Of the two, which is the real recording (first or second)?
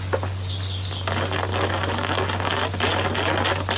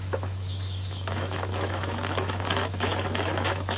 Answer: first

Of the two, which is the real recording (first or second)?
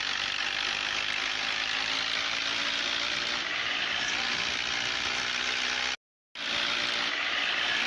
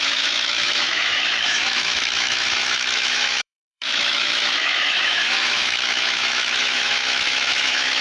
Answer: first